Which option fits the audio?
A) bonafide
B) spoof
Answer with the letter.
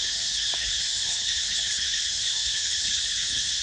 B